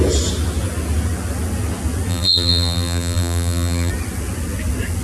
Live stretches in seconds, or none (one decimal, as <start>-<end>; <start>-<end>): 0.0-2.1; 3.9-5.0